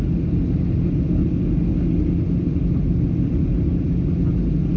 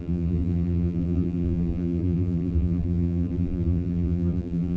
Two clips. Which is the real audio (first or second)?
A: first